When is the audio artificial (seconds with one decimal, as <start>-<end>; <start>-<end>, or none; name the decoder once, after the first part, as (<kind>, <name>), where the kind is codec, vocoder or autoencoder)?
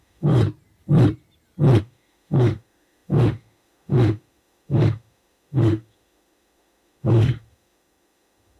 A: 0.0-0.4 (autoencoder, DAC-VAE); 1.8-8.6